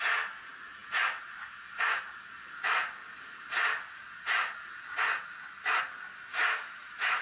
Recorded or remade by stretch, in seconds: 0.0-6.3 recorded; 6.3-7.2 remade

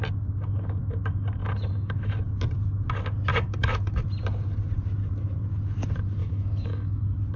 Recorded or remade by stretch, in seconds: 0.0-1.4 recorded; 1.4-2.1 remade; 2.1-3.3 recorded; 3.3-4.0 remade; 4.0-6.2 recorded; 6.2-7.0 remade; 7.0-7.4 recorded

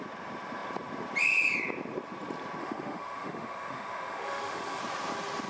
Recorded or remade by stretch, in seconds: 0.0-2.6 recorded; 2.6-4.8 remade; 4.8-5.5 recorded